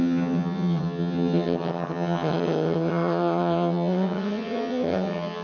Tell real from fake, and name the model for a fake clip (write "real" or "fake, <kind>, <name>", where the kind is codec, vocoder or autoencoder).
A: fake, vocoder, HiFi-GAN